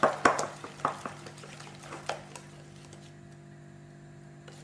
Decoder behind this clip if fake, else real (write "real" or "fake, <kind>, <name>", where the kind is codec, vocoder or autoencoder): real